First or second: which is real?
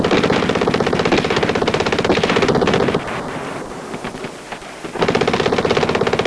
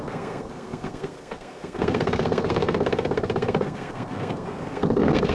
first